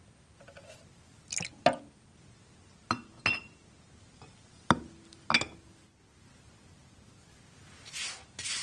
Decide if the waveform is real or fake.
real